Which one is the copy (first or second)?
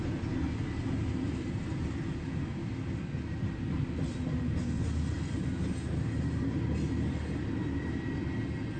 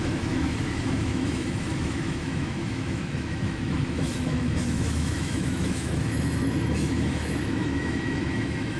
second